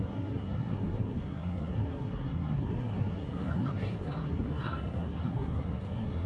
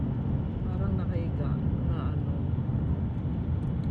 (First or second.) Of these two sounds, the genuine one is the second